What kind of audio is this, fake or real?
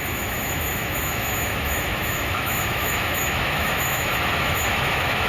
fake